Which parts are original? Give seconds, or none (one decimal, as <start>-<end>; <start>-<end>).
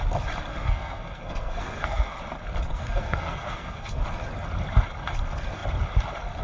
0.0-0.5; 2.2-2.7; 4.0-6.4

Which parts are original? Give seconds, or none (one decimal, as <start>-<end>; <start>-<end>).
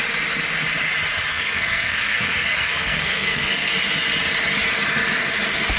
0.0-1.3; 3.7-5.8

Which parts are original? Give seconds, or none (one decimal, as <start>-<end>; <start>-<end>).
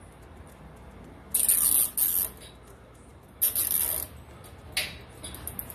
0.0-5.7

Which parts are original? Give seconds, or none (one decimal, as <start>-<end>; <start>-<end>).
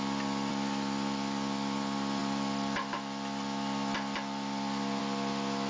0.0-5.7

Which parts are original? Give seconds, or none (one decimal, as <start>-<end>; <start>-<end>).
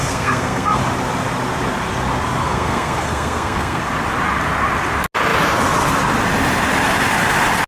0.8-2.4; 3.9-7.7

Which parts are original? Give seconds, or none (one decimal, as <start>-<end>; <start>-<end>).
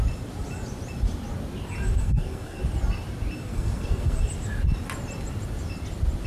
0.0-2.0; 2.6-3.5; 4.2-6.3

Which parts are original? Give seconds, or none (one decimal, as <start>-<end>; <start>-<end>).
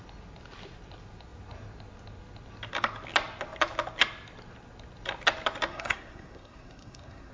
0.0-5.7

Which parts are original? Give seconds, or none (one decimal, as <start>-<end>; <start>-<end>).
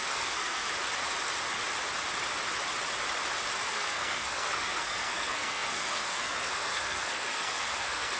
0.7-3.7